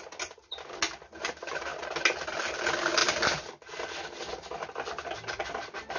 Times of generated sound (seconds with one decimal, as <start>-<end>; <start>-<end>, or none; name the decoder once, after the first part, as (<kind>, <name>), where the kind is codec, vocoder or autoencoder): none